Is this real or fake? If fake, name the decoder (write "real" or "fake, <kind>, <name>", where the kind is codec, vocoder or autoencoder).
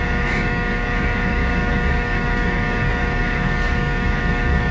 fake, codec, DAC